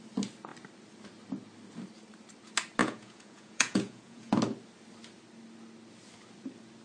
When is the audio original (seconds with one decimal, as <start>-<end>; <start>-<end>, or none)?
0.0-2.8; 4.4-6.8